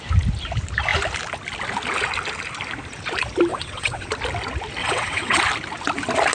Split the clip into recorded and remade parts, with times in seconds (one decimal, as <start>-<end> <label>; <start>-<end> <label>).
0.0-3.5 recorded; 3.5-4.1 remade; 4.1-4.8 recorded; 4.8-5.4 remade; 5.4-6.3 recorded